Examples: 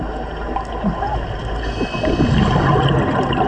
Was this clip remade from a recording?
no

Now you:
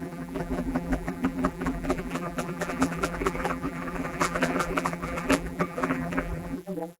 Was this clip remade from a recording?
yes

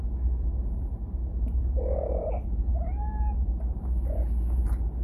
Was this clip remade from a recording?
yes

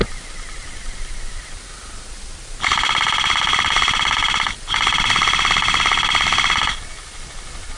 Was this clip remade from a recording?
no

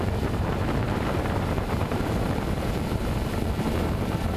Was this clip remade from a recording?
yes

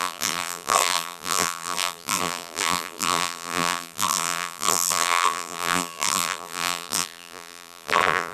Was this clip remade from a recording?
yes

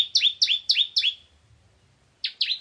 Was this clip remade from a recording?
no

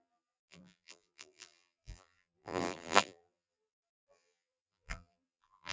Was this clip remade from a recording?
yes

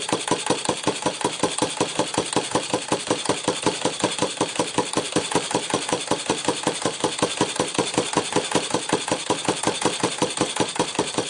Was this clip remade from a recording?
yes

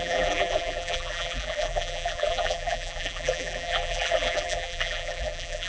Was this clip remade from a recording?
yes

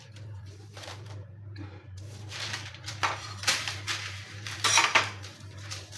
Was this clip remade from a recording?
yes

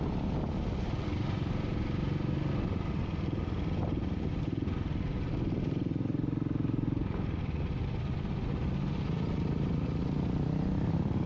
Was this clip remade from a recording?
no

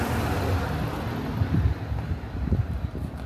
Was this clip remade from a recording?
no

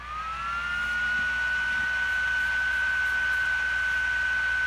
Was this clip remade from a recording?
yes